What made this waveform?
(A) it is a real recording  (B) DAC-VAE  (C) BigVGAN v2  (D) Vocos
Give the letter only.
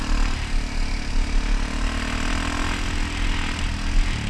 A